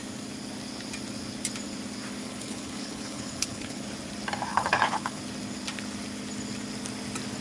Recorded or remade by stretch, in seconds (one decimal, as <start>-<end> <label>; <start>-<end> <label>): 0.0-2.2 recorded; 2.2-3.8 remade; 3.8-4.5 recorded; 4.5-5.2 remade; 5.2-7.4 recorded

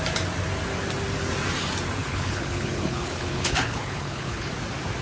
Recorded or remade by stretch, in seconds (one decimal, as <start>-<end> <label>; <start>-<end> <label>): 0.0-2.0 recorded; 2.0-4.5 remade; 4.5-5.0 recorded

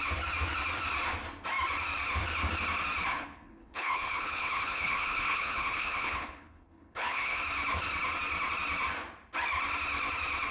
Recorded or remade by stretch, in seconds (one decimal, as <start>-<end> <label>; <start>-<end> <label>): 0.0-3.1 recorded; 3.1-7.4 remade; 7.4-10.5 recorded